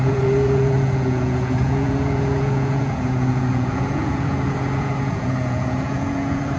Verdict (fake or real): fake